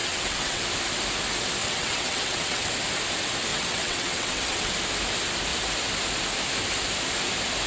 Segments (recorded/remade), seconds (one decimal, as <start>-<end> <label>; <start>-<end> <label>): 0.0-0.6 remade; 0.6-1.6 recorded; 1.6-2.7 remade; 2.7-3.5 recorded; 3.5-4.7 remade; 4.7-7.7 recorded

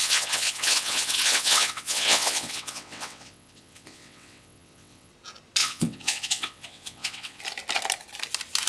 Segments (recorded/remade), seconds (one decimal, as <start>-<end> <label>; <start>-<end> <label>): 0.0-5.1 remade; 5.1-5.6 recorded; 5.6-7.4 remade; 7.4-8.7 recorded

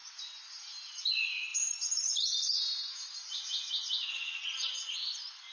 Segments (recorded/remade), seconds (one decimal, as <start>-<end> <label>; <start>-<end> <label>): 0.0-5.5 recorded

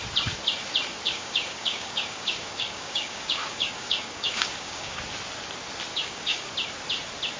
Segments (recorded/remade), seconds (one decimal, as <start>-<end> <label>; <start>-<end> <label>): 0.0-0.9 recorded; 0.9-5.0 remade; 5.0-5.9 recorded; 5.9-6.5 remade; 6.5-7.4 recorded

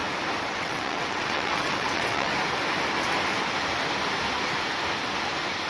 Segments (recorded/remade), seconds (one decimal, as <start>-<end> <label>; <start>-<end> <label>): 0.0-0.5 recorded; 0.5-2.3 remade; 2.3-5.7 recorded

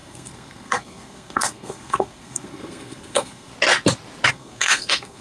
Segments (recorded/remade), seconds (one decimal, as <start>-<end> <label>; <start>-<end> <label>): 0.0-3.5 remade; 3.5-4.3 recorded; 4.3-5.2 remade

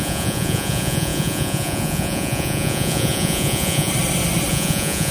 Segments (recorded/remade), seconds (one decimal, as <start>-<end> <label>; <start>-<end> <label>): 0.0-3.9 remade; 3.9-4.5 recorded; 4.5-5.1 remade

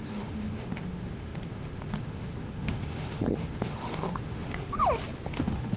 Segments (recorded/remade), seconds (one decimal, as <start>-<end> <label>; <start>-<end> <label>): 0.0-4.8 remade; 4.8-5.3 recorded; 5.3-5.8 remade